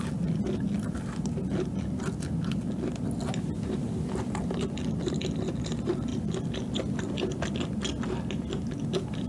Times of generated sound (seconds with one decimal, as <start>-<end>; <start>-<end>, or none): 6.1-7.5